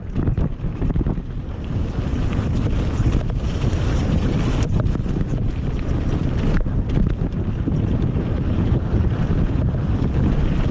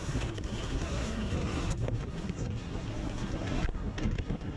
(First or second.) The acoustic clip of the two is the first